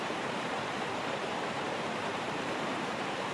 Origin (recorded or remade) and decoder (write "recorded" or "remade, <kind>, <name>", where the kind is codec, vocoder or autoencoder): remade, vocoder, BigVGAN v2